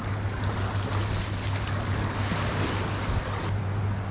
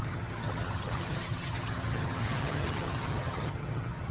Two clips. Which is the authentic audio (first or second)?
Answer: first